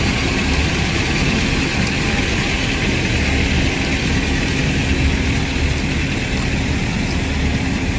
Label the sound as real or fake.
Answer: real